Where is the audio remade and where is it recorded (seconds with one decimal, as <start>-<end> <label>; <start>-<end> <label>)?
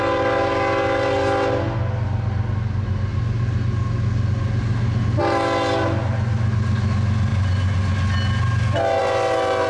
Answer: 0.0-9.7 recorded